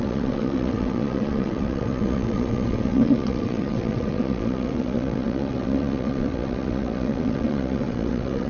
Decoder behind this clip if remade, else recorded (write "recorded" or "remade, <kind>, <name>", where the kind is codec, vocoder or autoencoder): remade, vocoder, WaveNeXt